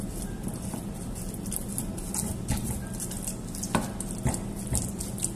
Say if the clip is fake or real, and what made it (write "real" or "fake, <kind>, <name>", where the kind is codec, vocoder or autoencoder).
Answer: real